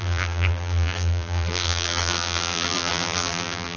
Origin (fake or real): fake